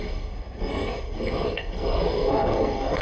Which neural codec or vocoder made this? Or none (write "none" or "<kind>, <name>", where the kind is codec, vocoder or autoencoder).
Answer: codec, SNAC